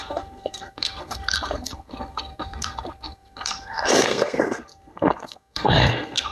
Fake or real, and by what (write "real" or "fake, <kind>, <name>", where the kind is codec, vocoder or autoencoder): fake, codec, SNAC